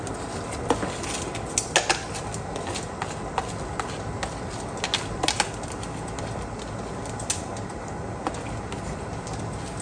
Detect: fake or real real